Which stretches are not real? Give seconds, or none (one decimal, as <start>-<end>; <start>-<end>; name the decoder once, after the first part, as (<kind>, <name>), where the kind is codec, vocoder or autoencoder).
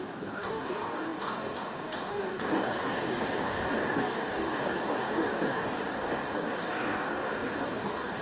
0.0-8.2 (codec, DAC)